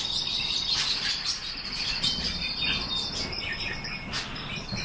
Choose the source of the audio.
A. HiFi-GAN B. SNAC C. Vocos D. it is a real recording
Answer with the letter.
D